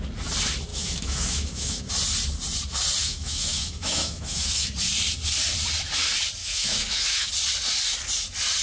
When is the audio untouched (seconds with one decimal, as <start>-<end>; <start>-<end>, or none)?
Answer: 0.0-0.7; 1.9-3.0; 4.7-6.4; 7.3-8.6